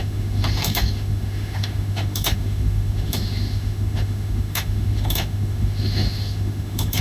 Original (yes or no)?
no